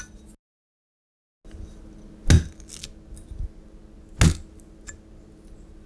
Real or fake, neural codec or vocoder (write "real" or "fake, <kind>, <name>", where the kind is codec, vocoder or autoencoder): real